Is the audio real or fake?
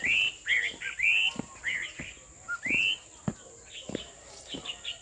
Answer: real